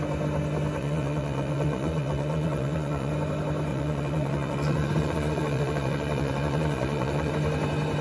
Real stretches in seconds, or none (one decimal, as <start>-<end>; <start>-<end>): 0.0-0.8; 3.1-3.7; 7.3-8.0